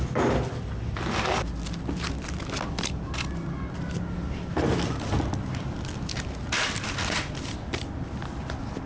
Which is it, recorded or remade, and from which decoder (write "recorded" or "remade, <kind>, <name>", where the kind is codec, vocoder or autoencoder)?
recorded